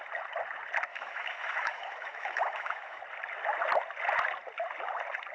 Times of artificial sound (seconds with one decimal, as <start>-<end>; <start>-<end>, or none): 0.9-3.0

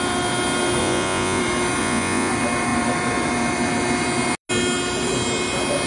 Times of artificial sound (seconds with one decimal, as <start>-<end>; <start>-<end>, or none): 0.8-1.4; 1.8-2.3

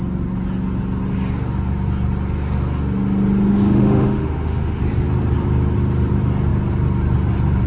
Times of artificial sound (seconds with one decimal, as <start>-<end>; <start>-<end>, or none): 3.5-4.8